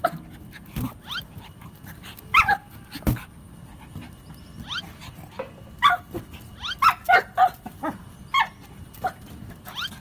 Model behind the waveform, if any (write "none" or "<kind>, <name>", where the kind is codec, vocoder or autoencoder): none